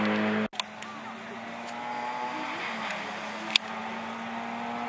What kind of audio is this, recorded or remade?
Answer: recorded